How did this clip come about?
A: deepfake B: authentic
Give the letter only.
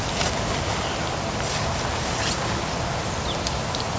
B